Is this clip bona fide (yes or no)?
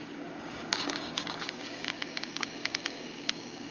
no